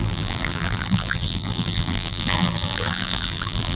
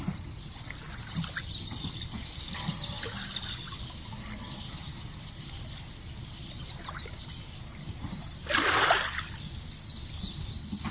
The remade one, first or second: first